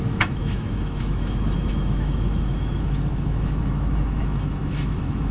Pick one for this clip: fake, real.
fake